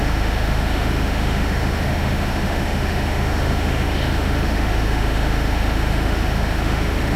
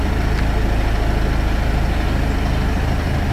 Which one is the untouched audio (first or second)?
second